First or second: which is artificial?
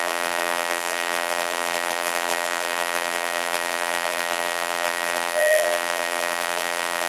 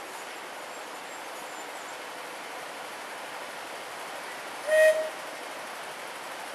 first